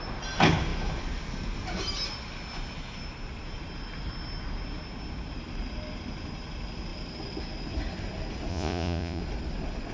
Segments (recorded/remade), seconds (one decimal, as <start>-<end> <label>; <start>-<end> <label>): 0.0-8.5 recorded; 8.5-9.2 remade; 9.2-9.9 recorded